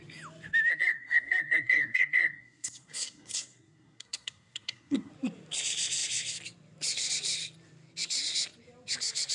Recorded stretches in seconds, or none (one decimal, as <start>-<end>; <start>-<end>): 0.0-0.7; 5.1-9.3